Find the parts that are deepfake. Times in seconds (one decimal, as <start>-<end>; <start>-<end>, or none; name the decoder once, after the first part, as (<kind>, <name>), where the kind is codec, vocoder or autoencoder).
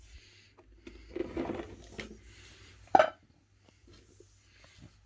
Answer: none